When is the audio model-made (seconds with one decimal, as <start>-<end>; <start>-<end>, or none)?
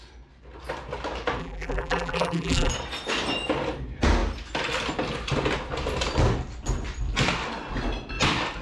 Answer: 1.4-2.7